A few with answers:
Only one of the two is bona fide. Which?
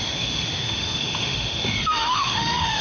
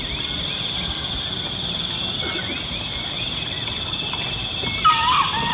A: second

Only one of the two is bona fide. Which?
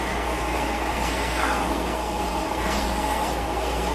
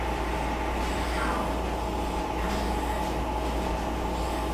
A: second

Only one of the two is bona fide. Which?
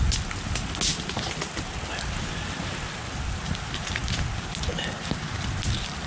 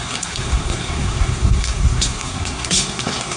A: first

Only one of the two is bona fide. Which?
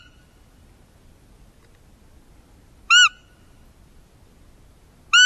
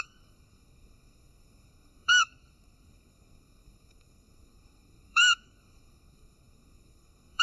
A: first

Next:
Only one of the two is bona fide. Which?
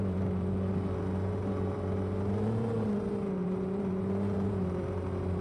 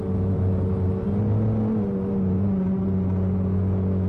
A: second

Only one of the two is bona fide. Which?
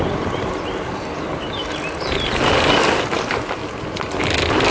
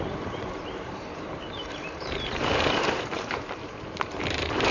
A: first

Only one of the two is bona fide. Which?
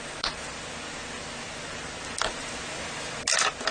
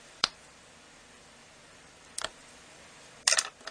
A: first